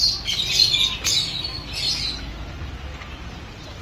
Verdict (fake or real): real